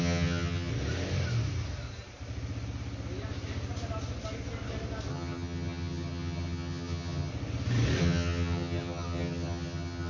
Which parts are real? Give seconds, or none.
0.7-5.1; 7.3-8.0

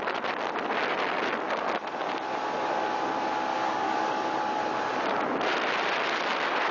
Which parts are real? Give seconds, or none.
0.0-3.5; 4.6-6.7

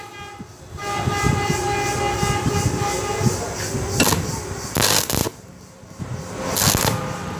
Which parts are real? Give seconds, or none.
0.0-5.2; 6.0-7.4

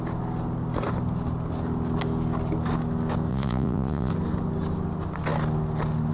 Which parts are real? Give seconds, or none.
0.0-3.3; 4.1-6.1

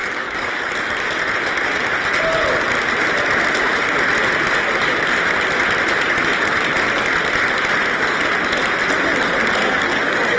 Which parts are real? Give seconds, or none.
0.7-9.6

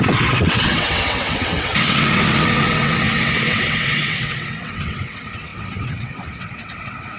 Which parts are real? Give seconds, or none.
none